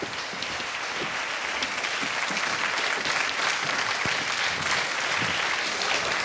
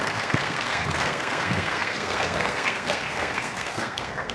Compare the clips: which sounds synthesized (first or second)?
second